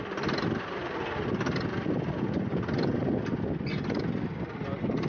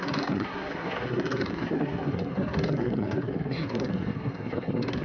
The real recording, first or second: first